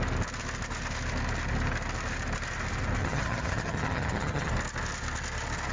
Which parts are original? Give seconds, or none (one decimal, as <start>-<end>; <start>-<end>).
0.0-3.0; 4.5-5.7